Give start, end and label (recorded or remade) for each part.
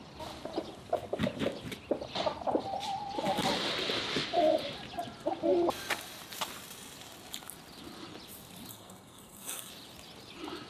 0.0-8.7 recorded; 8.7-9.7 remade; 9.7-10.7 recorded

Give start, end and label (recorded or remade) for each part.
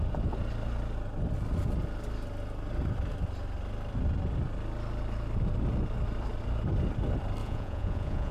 0.0-7.4 recorded; 7.4-8.3 remade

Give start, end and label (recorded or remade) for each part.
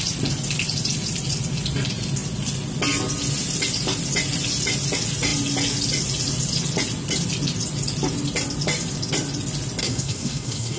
0.0-9.8 recorded; 9.8-10.8 remade